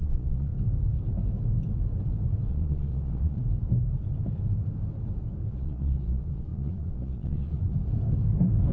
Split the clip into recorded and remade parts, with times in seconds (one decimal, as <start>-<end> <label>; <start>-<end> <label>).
0.0-0.5 remade; 0.5-2.5 recorded; 2.5-3.4 remade; 3.4-5.5 recorded; 5.5-7.7 remade; 7.7-8.7 recorded